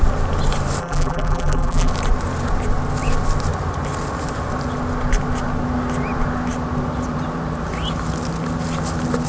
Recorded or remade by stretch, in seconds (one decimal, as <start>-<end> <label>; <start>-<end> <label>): 0.0-0.8 recorded; 0.8-1.9 remade; 1.9-9.3 recorded